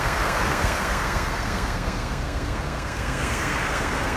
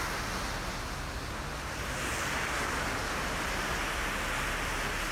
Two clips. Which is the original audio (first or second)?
second